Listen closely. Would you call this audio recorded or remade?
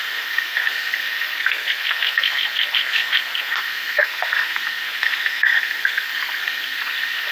remade